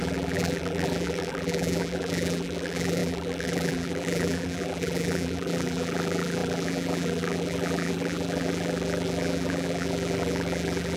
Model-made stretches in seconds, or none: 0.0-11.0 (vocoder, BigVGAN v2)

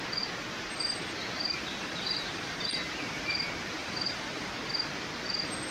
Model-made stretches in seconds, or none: 1.8-2.6 (vocoder, BigVGAN v2); 3.8-4.5

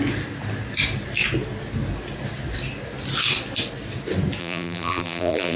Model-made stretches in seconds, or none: 4.4-5.6 (vocoder, BigVGAN v2)

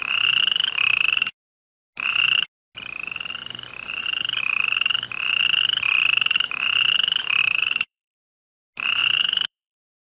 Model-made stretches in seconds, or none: 7.4-8.6 (vocoder, BigVGAN v2); 9.0-10.2